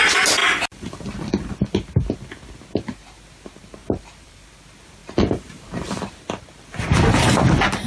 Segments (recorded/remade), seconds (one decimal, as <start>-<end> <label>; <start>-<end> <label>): 0.0-3.8 recorded; 3.8-4.5 remade; 4.5-5.0 recorded; 5.0-6.1 remade; 6.1-7.9 recorded